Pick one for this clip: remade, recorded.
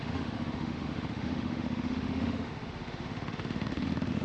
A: remade